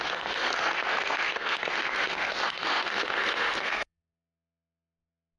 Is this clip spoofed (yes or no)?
yes